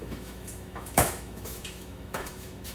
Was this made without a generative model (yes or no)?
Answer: no